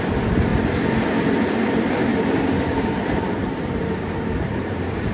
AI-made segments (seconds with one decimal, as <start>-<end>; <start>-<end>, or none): 2.1-5.1